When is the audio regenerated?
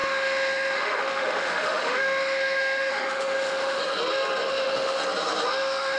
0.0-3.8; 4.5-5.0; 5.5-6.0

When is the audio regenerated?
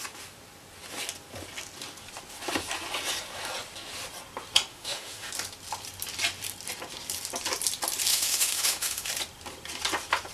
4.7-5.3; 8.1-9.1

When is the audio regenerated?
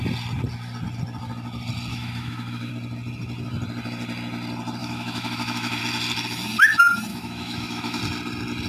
1.9-2.7; 4.8-5.8; 7.1-8.0